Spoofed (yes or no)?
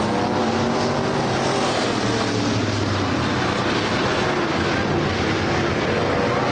no